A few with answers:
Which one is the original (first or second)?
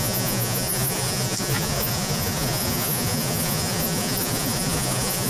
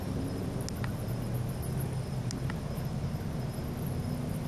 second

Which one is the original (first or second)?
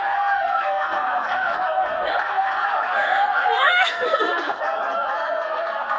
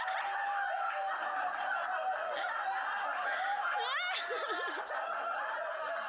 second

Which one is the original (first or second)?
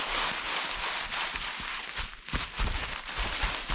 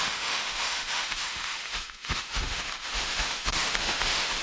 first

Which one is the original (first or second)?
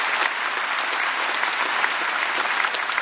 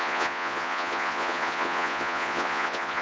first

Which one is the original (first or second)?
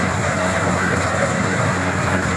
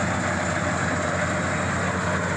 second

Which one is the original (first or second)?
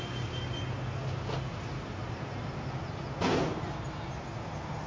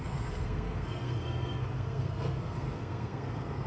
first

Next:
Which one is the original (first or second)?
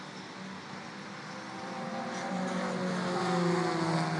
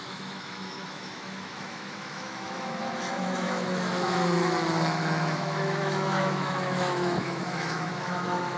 first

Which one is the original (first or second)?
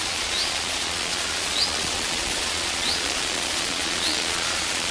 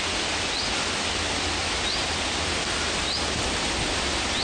second